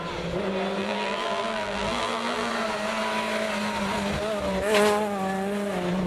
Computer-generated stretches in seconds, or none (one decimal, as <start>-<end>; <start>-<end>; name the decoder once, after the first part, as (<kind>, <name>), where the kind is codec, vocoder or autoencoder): 0.8-2.5 (vocoder, BigVGAN v2)